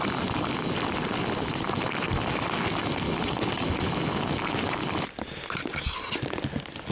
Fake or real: real